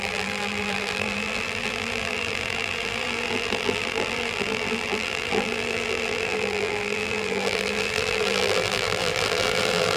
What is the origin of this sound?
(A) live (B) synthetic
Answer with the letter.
B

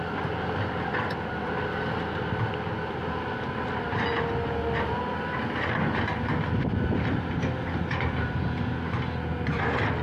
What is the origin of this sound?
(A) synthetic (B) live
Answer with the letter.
B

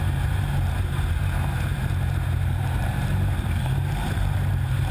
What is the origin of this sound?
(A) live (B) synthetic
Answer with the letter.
B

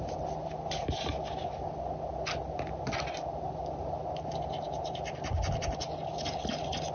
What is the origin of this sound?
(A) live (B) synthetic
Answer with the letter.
A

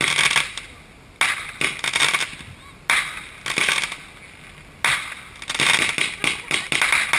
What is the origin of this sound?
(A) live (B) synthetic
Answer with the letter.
A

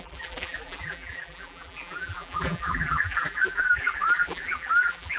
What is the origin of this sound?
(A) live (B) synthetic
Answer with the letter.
B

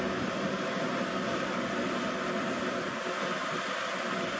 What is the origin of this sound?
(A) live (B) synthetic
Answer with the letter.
A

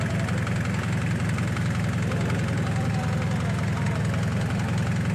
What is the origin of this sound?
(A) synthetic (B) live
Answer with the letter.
B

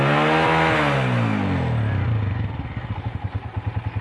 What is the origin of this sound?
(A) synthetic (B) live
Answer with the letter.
B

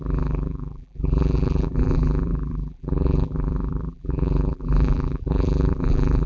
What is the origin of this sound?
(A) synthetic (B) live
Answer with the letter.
A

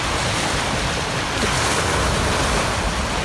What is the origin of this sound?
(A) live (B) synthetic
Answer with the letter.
A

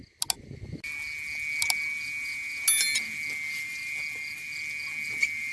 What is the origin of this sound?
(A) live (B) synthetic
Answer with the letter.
A